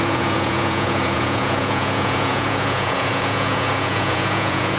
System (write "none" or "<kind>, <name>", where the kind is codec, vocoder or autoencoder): vocoder, Vocos